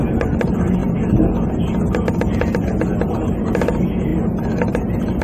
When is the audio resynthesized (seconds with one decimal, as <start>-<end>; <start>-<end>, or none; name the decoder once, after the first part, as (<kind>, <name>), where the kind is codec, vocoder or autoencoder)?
none

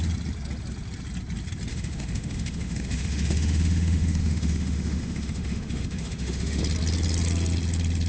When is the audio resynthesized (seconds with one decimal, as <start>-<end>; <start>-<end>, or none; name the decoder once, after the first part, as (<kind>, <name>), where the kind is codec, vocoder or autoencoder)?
1.7-6.6 (autoencoder, DAC-VAE)

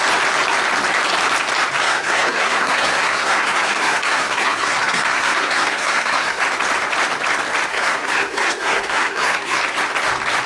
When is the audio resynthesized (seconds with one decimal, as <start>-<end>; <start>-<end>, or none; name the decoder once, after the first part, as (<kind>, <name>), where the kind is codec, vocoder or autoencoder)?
1.8-6.4 (codec, SNAC); 7.7-9.6

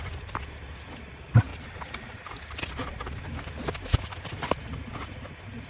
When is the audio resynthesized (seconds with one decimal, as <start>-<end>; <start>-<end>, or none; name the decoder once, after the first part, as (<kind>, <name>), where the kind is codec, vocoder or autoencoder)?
1.5-4.9 (vocoder, BigVGAN v2)

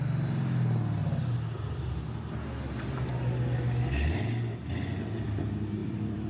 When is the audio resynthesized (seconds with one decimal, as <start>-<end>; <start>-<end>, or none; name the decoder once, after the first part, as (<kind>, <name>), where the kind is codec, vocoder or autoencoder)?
5.8-6.3 (vocoder, BigVGAN v2)